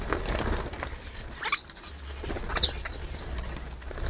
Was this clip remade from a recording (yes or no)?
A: no